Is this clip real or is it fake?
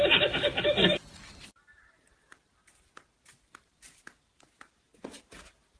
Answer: real